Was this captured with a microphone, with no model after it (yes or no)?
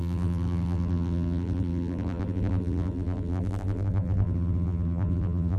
no